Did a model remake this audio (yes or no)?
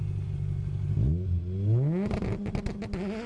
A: no